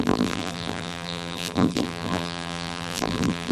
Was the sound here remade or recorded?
remade